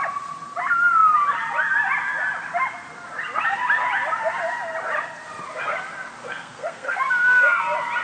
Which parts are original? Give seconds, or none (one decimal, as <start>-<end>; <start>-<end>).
0.0-6.2; 7.6-8.0